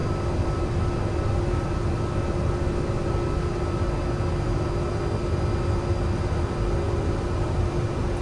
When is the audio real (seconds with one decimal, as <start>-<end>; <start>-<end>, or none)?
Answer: 0.0-8.2